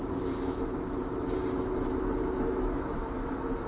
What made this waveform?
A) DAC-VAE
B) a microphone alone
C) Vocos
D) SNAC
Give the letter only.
A